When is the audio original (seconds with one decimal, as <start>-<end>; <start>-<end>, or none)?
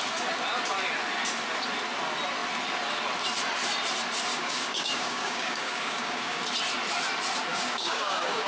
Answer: 0.0-4.3; 6.4-7.5